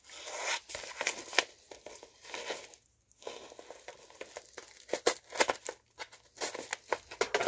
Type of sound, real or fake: real